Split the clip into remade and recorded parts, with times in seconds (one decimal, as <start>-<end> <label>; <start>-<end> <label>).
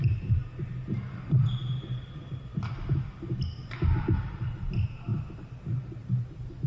0.0-6.7 recorded